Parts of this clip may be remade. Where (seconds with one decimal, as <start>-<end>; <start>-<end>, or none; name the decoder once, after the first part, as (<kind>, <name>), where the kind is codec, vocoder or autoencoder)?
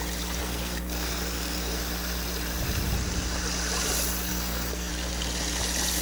0.4-1.8 (codec, SNAC); 4.3-4.9